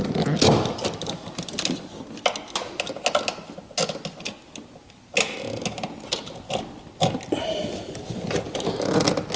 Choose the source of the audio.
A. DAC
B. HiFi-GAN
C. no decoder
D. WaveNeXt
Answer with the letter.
C